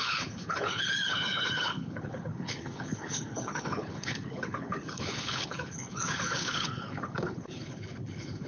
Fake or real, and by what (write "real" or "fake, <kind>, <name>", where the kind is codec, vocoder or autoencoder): fake, codec, HILCodec